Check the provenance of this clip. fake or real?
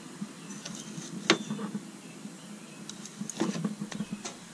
real